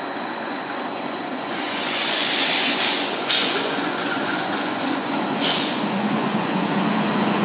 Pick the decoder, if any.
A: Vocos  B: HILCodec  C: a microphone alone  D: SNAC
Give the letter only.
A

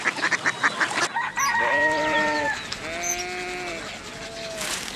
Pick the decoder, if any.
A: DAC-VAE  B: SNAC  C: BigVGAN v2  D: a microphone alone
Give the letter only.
D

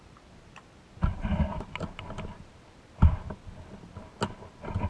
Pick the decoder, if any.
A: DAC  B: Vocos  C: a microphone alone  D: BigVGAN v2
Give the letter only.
C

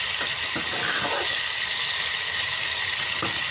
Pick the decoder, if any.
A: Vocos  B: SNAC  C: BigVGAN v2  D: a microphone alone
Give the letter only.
D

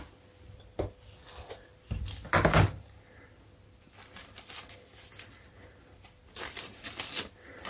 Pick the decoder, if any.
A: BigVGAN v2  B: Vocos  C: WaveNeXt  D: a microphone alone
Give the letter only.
D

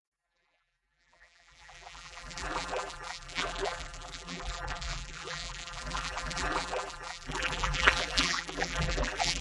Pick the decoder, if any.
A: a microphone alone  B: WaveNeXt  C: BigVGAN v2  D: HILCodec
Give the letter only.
C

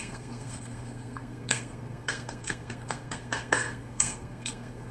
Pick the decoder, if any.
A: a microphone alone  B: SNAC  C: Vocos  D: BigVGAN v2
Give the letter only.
B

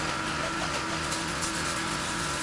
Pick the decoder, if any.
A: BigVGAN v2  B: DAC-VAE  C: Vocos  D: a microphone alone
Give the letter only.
D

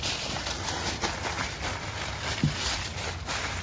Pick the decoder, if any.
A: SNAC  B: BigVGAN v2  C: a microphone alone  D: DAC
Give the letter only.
C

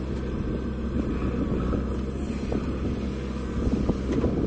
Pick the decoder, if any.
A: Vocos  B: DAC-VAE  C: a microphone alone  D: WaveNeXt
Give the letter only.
C